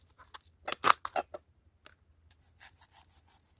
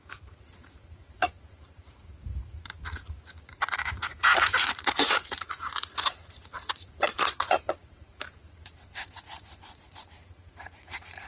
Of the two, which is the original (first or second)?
first